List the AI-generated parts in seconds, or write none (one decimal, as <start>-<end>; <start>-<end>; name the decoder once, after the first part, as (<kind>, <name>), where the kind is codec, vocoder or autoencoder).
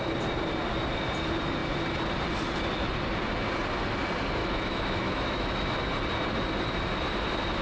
4.4-5.7 (autoencoder, DAC-VAE)